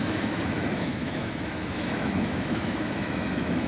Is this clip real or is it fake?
fake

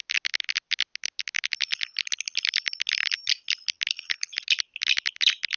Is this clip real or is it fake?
real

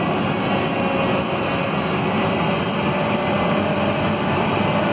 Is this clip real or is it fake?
real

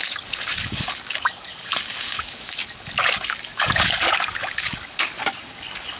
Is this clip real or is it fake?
fake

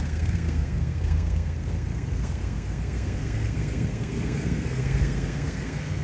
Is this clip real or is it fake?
fake